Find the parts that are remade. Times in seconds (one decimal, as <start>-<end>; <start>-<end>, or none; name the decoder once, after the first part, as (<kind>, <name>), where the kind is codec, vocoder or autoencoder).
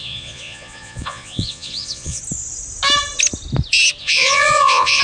0.0-2.2 (vocoder, Vocos); 4.0-5.0